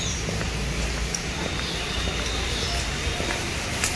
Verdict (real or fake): real